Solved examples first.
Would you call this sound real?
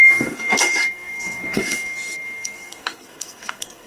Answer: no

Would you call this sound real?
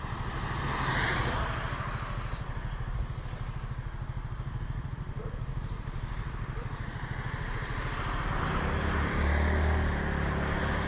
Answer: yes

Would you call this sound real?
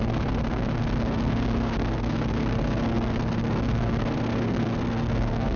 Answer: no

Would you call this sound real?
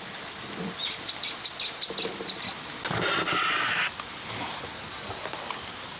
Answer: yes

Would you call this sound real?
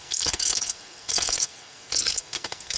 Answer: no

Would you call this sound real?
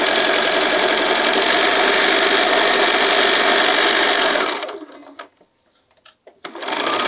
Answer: yes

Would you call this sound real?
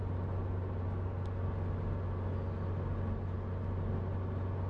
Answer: yes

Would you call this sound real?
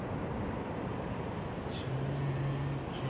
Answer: yes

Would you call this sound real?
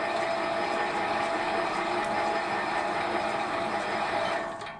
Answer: yes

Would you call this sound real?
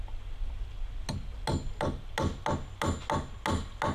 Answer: yes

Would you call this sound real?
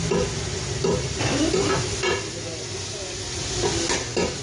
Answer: yes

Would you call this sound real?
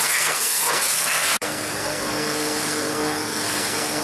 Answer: no